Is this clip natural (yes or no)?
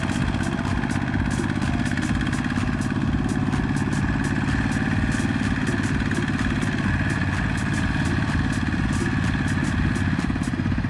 yes